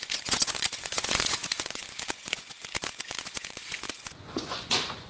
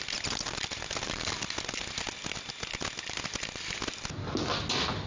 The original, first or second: second